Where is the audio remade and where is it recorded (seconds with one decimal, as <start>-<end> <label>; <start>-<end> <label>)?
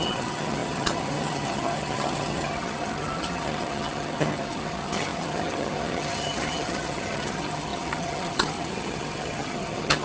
0.0-10.0 remade